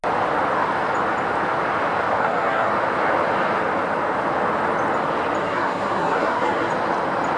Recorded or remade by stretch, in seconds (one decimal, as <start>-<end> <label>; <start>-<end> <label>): 0.0-2.2 recorded; 2.2-2.7 remade; 2.7-5.4 recorded; 5.4-6.7 remade; 6.7-7.4 recorded